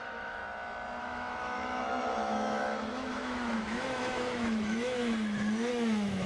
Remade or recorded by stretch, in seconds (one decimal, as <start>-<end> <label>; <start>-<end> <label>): 0.0-0.4 remade; 0.4-1.0 recorded; 1.0-5.0 remade; 5.0-5.7 recorded; 5.7-6.3 remade

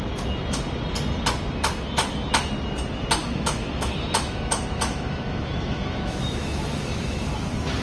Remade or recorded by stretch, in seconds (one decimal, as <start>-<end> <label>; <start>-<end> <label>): 0.0-3.2 recorded; 3.2-7.3 remade; 7.3-7.8 recorded

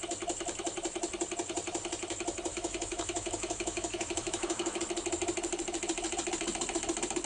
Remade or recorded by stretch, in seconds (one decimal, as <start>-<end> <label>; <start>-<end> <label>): 0.0-2.5 recorded; 2.5-4.8 remade; 4.8-7.3 recorded